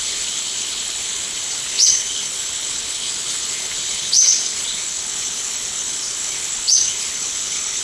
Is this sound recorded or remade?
remade